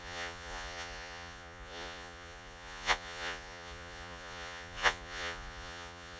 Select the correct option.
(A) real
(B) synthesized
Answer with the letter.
B